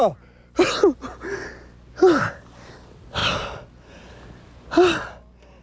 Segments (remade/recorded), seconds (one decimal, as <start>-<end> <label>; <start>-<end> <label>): 0.0-5.6 recorded

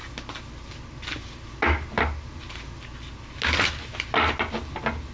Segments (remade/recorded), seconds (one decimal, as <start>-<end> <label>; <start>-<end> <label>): 0.0-5.1 recorded

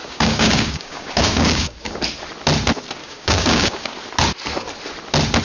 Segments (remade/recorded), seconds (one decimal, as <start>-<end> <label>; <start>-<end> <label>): 0.0-2.0 remade; 2.0-3.0 recorded; 3.0-3.9 remade; 3.9-5.4 recorded

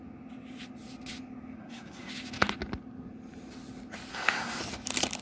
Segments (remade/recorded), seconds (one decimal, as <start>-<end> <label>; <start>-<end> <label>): 0.0-1.6 recorded; 1.6-2.1 remade; 2.1-4.1 recorded; 4.1-4.6 remade; 4.6-5.2 recorded

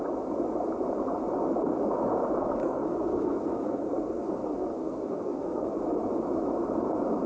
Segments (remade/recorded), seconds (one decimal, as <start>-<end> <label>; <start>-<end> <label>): 0.0-2.6 recorded; 2.6-5.8 remade; 5.8-7.3 recorded

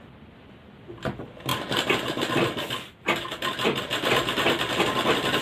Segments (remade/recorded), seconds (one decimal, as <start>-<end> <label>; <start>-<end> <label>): 0.0-5.4 recorded